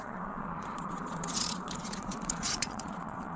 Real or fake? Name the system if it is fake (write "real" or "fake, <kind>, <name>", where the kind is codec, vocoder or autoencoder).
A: fake, vocoder, Vocos